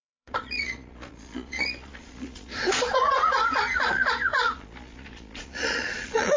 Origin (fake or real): fake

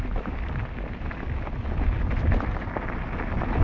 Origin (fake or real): real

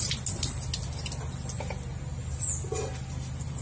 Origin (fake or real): real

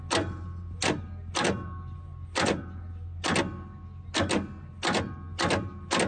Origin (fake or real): real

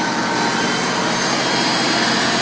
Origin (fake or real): fake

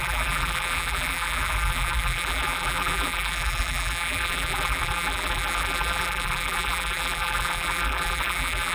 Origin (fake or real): fake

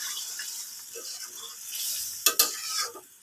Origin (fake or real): real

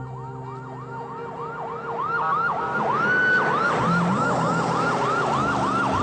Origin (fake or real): real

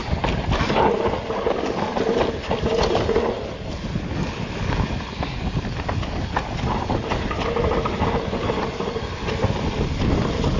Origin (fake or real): real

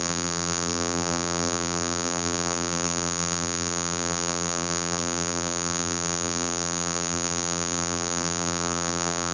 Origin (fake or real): fake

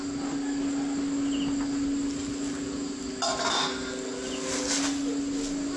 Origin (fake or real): real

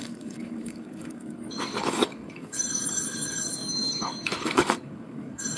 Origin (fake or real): fake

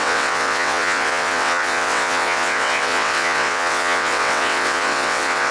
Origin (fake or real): fake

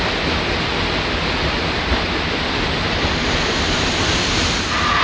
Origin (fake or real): real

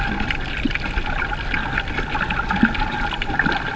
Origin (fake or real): real